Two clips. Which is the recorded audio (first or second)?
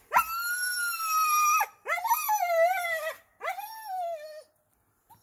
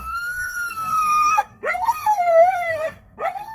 first